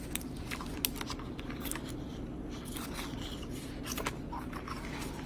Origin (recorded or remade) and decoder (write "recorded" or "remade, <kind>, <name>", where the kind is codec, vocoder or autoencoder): recorded